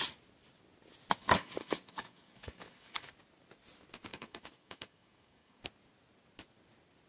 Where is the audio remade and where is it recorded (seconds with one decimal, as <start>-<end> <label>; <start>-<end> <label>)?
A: 0.0-1.2 recorded; 1.2-3.1 remade; 3.1-4.1 recorded; 4.1-5.6 remade; 5.6-7.1 recorded